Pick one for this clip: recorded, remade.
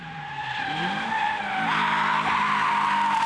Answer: recorded